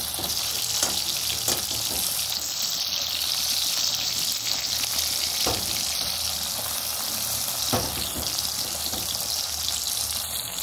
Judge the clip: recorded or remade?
recorded